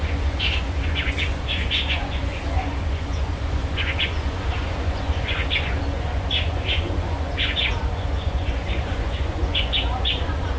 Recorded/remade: remade